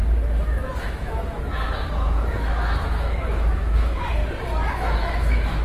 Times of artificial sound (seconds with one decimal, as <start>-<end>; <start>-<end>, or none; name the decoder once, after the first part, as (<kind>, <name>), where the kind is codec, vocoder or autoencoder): 0.8-4.2 (autoencoder, DAC-VAE); 4.7-5.6